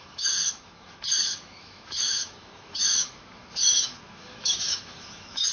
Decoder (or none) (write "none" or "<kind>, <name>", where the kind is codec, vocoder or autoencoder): autoencoder, DAC-VAE